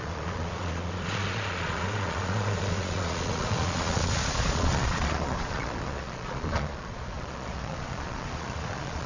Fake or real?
fake